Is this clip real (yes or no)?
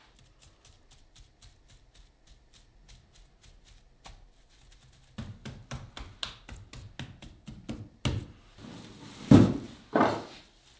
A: yes